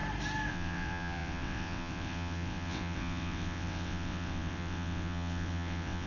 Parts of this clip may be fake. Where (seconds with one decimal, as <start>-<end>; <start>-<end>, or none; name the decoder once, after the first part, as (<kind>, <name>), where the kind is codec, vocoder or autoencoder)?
0.5-6.1 (vocoder, WaveNeXt)